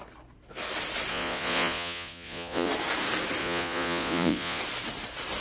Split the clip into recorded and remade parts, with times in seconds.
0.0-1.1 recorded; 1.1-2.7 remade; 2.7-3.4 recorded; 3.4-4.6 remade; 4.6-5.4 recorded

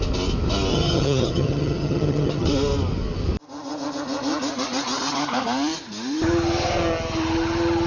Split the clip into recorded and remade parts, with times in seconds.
0.0-0.7 recorded; 0.7-2.5 remade; 2.5-7.9 recorded

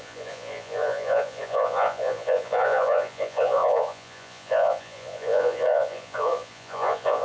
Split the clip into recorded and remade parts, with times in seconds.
0.0-7.2 remade